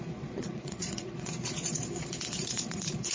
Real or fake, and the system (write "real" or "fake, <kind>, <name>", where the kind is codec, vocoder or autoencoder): fake, vocoder, Vocos